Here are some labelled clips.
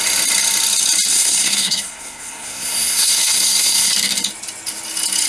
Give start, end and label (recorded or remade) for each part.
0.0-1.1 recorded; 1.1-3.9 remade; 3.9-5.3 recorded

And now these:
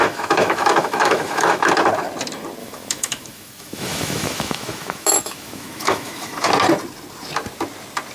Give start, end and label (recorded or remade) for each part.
0.0-1.7 remade; 1.7-2.6 recorded; 2.6-6.5 remade; 6.5-8.1 recorded

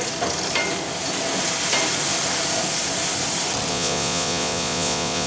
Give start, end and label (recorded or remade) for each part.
0.0-3.7 recorded; 3.7-5.3 remade

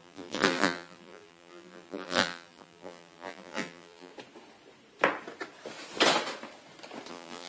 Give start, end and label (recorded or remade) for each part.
0.0-4.1 remade; 4.1-7.1 recorded; 7.1-7.5 remade

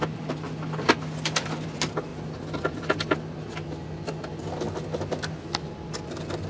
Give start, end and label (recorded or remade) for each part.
0.0-6.5 recorded

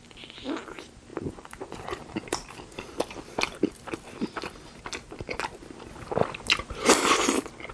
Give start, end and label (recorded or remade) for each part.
0.0-1.1 recorded; 1.1-3.7 remade; 3.7-7.7 recorded

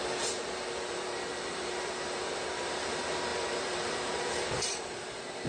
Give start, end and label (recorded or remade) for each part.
0.0-5.5 remade

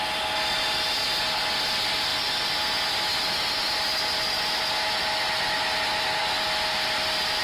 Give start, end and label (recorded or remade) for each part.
0.0-7.4 recorded